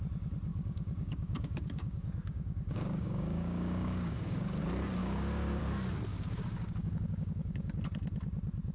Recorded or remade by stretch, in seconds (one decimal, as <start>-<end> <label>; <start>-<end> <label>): 0.0-0.5 recorded; 0.5-4.6 remade; 4.6-5.0 recorded; 5.0-5.6 remade; 5.6-6.1 recorded; 6.1-7.8 remade; 7.8-8.7 recorded